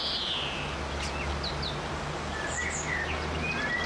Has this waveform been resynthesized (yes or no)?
no